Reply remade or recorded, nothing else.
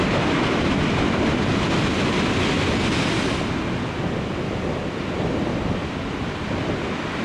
recorded